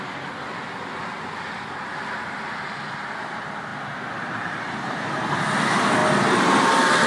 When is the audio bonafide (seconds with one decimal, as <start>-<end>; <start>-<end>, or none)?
0.0-3.7; 5.3-7.1

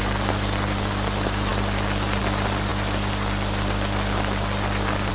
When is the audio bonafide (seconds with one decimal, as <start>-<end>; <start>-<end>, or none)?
0.0-5.1

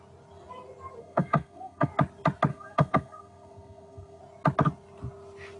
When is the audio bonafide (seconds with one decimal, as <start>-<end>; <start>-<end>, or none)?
0.0-1.0; 1.9-2.5; 4.2-5.6

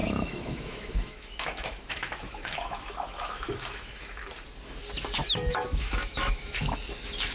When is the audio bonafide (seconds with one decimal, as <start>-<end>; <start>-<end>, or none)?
4.3-5.2; 6.8-7.3

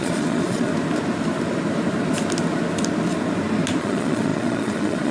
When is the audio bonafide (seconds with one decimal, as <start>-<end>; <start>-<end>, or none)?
0.7-3.8

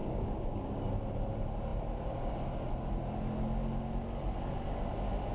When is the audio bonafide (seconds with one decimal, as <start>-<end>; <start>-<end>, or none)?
0.9-5.3